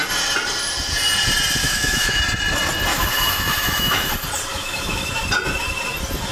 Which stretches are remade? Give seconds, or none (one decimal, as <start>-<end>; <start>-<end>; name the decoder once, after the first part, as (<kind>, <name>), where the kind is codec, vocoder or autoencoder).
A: 1.6-2.2 (autoencoder, DAC-VAE); 2.9-4.1; 4.5-5.1